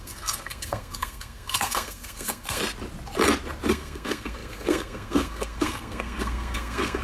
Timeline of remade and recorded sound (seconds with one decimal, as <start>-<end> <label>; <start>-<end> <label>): 0.0-2.6 remade; 2.6-3.7 recorded; 3.7-7.0 remade